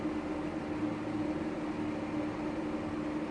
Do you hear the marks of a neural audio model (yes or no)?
no